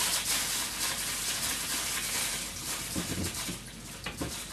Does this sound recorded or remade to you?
recorded